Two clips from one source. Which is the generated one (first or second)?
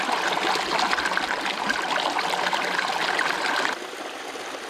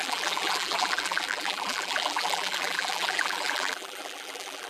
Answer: second